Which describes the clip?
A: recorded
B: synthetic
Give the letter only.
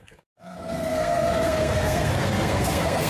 B